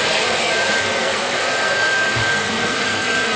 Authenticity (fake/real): fake